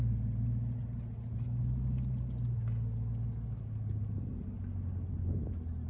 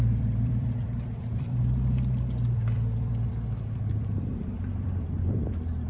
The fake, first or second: second